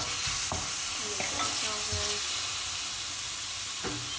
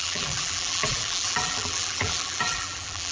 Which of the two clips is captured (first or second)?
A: first